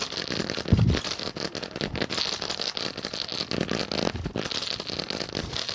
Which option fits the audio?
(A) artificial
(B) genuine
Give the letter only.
B